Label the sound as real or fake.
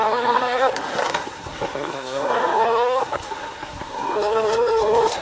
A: fake